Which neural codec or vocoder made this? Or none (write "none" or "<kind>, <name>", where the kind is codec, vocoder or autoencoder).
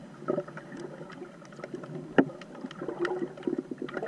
none